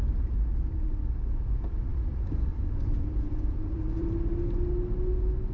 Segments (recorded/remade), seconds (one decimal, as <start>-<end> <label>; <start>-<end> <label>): 0.0-1.9 recorded; 1.9-4.1 remade; 4.1-5.5 recorded